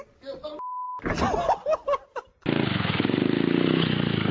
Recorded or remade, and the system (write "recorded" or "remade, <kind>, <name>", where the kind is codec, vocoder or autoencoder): recorded